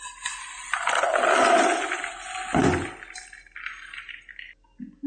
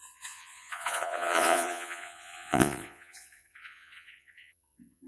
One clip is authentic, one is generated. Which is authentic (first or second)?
first